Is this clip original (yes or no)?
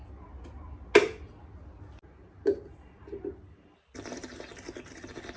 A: yes